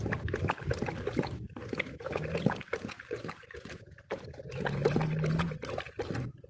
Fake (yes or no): no